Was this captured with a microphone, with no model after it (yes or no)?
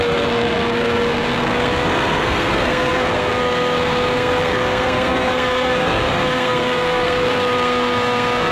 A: no